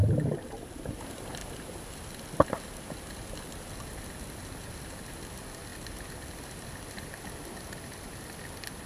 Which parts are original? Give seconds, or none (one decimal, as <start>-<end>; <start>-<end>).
0.0-8.9